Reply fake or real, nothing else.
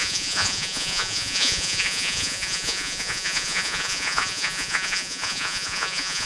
fake